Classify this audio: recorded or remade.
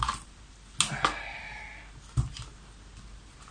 recorded